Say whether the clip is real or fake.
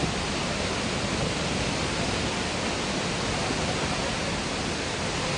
real